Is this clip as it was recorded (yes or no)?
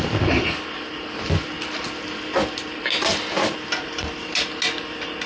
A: yes